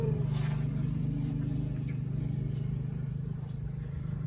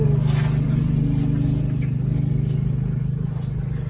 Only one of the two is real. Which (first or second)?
second